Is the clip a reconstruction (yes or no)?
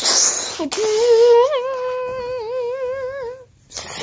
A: no